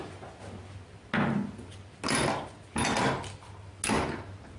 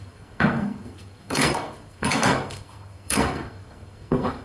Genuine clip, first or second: first